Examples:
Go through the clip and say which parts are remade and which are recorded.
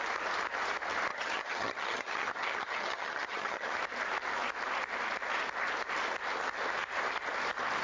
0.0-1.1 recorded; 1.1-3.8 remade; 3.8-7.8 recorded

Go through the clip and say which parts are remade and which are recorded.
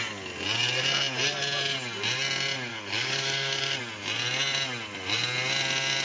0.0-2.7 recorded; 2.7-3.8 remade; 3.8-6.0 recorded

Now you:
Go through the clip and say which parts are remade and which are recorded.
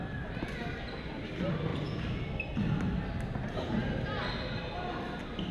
0.0-5.5 recorded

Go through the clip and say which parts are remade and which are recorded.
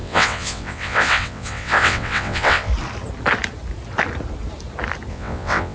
0.0-2.7 remade; 2.7-5.1 recorded; 5.1-5.7 remade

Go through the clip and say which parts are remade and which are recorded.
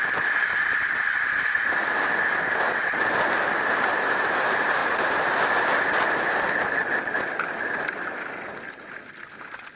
0.0-9.8 recorded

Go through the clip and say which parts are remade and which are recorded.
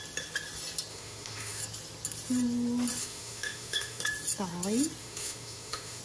0.0-0.9 recorded; 0.9-1.6 remade; 1.6-3.0 recorded; 3.0-4.0 remade; 4.0-5.0 recorded; 5.0-6.0 remade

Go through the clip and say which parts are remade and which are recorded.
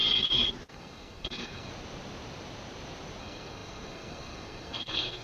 0.0-0.7 recorded; 0.7-1.7 remade; 1.7-3.2 recorded; 3.2-5.2 remade